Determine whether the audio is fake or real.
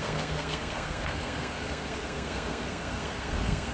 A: fake